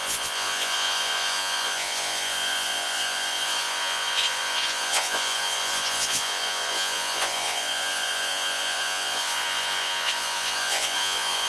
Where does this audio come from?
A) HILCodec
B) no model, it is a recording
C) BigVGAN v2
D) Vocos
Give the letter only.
D